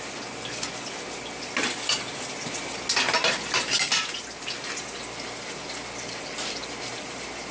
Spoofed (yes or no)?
no